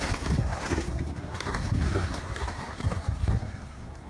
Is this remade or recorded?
remade